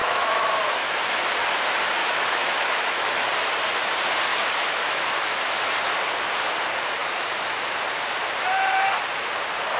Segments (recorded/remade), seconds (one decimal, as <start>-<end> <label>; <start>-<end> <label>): 0.0-1.0 remade; 1.0-2.0 recorded; 2.0-3.3 remade; 3.3-4.3 recorded; 4.3-5.7 remade; 5.7-7.0 recorded; 7.0-7.7 remade; 7.7-9.8 recorded